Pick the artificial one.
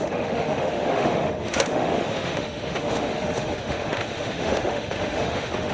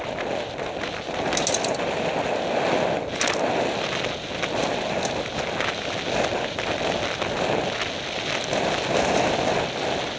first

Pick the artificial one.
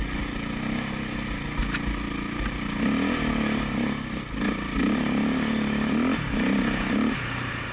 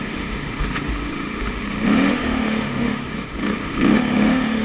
second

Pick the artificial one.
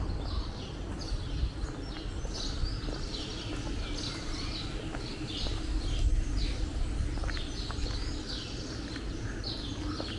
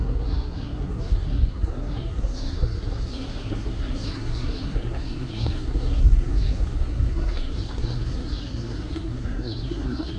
second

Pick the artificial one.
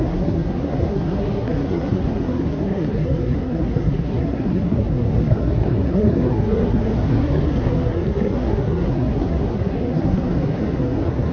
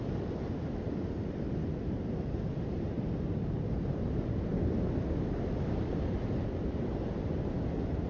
first